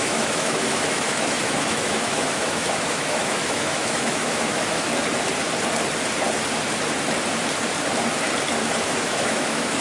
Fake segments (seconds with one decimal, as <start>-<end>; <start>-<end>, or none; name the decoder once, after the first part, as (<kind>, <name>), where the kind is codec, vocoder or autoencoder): 0.0-4.9 (autoencoder, DAC-VAE); 8.8-9.8